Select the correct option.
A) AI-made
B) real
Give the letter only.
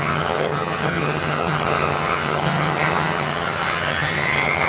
A